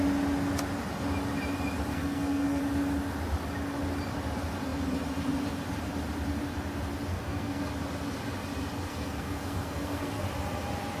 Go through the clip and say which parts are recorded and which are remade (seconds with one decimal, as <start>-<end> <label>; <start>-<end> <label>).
0.0-1.9 recorded; 1.9-2.6 remade; 2.6-7.1 recorded; 7.1-7.7 remade; 7.7-8.9 recorded; 8.9-10.2 remade; 10.2-11.0 recorded